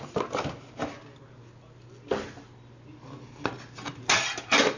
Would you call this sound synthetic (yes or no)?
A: no